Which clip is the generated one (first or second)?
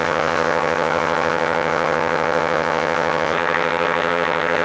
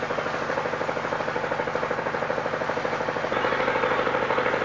first